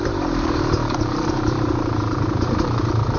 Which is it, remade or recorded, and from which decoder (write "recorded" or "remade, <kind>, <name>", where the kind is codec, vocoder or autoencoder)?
remade, vocoder, BigVGAN v2